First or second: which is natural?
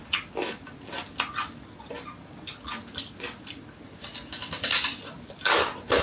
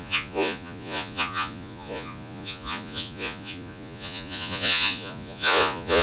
first